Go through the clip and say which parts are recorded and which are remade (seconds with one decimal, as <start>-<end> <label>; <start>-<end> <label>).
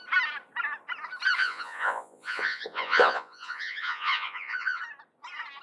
0.0-1.4 recorded; 1.4-4.8 remade; 4.8-5.6 recorded